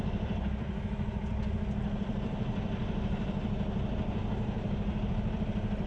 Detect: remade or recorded remade